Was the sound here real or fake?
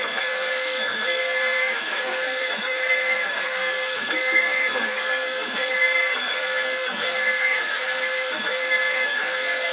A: fake